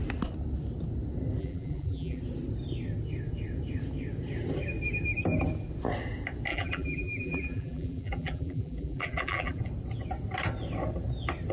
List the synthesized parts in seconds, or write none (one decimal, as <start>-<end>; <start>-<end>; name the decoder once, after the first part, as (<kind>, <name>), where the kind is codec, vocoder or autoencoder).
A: 1.4-2.2 (vocoder, BigVGAN v2); 6.5-9.6